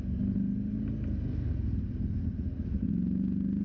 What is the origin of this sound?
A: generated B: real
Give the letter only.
B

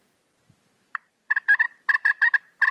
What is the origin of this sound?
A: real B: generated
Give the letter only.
B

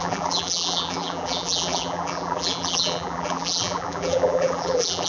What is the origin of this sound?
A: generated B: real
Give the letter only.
A